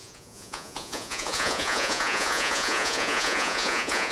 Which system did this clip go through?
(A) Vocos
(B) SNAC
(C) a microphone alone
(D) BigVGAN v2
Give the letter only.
A